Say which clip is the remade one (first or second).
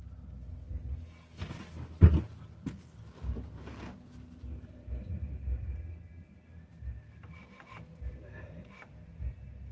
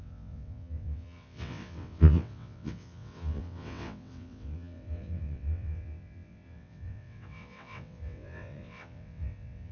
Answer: second